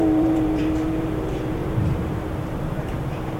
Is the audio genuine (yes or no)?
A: no